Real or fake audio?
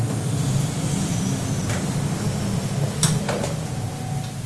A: real